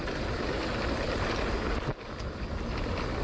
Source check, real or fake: real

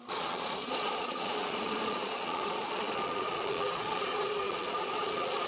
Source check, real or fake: fake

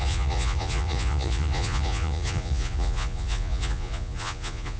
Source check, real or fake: fake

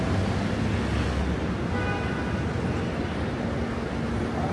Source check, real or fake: real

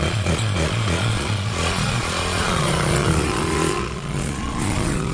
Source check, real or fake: fake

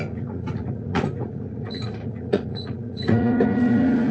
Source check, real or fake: fake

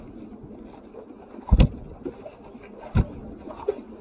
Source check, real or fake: real